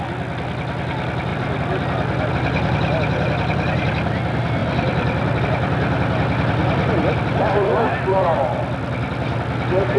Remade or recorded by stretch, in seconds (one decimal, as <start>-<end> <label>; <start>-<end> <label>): 0.0-1.3 recorded; 1.3-2.3 remade; 2.3-4.6 recorded; 4.6-5.4 remade; 5.4-6.6 recorded; 6.6-9.1 remade; 9.1-10.0 recorded